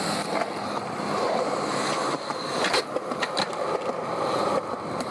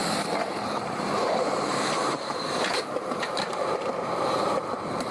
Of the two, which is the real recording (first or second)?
first